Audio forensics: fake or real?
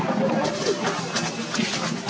real